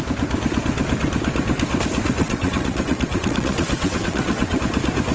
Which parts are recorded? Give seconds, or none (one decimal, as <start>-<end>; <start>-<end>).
0.0-2.2; 4.6-5.1

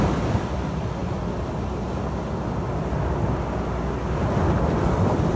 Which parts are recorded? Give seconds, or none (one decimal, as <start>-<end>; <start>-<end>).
0.0-5.4

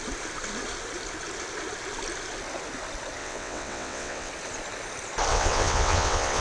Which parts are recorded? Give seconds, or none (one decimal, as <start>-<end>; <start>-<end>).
0.0-3.2; 4.3-5.3